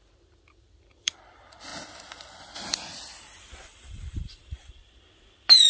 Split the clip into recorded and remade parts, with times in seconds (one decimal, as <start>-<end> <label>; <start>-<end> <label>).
0.0-1.7 remade; 1.7-2.4 recorded; 2.4-4.4 remade; 4.4-5.7 recorded